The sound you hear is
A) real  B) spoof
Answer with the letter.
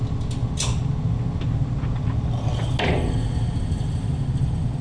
A